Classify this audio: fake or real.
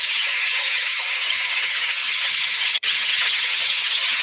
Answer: fake